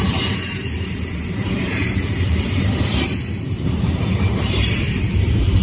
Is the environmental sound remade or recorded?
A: remade